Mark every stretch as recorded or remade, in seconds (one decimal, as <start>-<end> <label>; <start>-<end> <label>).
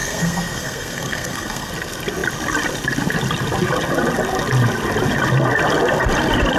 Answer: 0.0-1.7 remade; 1.7-6.6 recorded